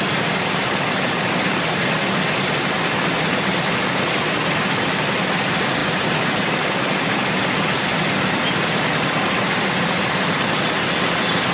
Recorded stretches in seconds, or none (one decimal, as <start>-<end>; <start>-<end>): 0.0-11.5